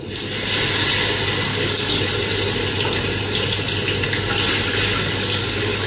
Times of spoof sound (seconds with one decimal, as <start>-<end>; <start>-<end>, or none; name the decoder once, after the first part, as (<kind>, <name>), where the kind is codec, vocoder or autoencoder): 1.5-2.1 (codec, DAC); 4.7-5.9